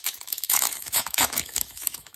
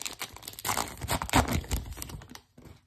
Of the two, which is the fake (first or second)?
first